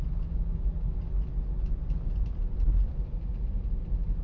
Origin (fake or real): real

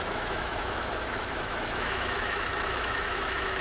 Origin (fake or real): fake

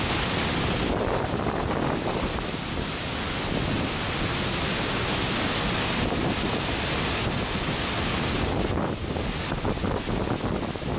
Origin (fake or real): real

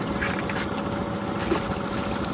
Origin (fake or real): real